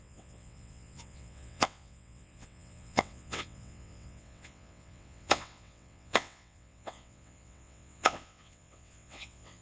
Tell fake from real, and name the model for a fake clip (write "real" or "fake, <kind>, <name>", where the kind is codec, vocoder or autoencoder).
fake, vocoder, WaveNeXt